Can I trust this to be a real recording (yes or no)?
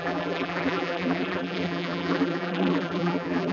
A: no